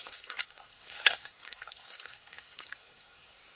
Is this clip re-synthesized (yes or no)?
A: yes